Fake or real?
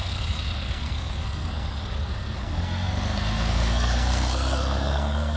fake